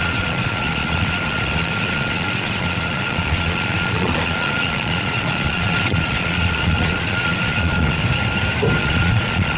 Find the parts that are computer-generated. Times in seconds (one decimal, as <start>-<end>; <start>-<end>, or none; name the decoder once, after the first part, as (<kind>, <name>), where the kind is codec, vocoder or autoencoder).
0.0-8.0 (vocoder, Vocos); 8.8-9.6

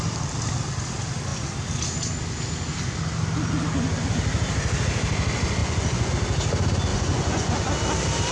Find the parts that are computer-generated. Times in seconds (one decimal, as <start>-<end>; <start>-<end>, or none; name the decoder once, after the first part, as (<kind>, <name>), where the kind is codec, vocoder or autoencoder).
5.6-6.1 (vocoder, Vocos); 6.9-7.6